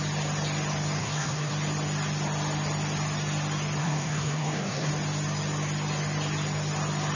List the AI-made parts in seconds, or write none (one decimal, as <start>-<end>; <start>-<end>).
1.0-1.5; 3.8-4.9